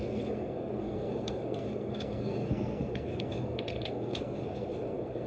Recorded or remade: remade